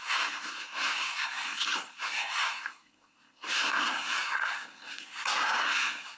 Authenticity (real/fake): fake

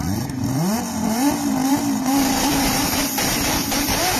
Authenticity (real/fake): fake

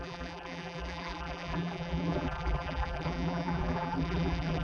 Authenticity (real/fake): fake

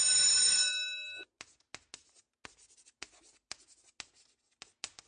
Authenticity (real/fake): real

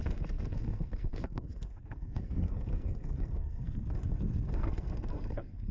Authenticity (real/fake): fake